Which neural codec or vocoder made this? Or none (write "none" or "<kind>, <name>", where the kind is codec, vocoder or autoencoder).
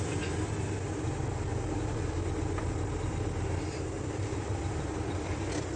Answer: none